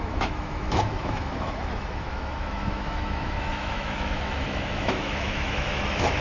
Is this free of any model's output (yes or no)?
no